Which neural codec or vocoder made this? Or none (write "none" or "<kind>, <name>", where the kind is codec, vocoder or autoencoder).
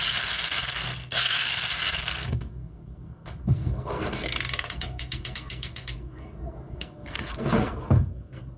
codec, SNAC